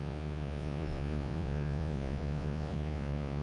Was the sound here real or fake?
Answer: fake